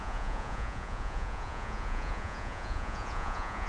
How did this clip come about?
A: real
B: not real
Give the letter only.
B